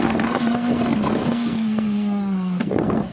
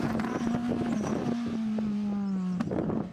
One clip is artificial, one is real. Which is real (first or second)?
second